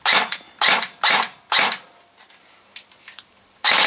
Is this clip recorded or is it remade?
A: recorded